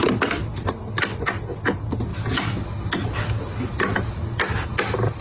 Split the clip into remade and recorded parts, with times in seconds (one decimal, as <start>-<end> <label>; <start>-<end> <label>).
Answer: 0.0-5.2 recorded

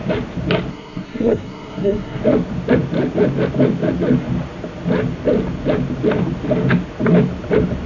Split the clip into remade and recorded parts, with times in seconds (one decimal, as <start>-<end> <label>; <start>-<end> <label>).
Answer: 0.0-0.7 recorded; 0.7-2.2 remade; 2.2-7.9 recorded

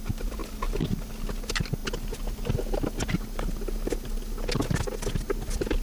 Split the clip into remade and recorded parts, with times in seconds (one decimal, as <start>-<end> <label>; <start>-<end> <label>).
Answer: 0.0-5.8 recorded

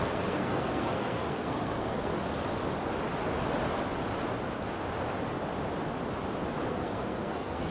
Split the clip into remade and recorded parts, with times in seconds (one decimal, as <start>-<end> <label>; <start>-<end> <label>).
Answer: 0.0-2.1 remade; 2.1-6.7 recorded; 6.7-7.7 remade

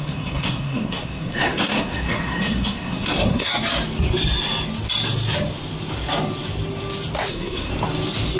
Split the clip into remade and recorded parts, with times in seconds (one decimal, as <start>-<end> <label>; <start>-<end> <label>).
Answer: 0.0-3.5 remade; 3.5-7.3 recorded; 7.3-7.7 remade; 7.7-8.4 recorded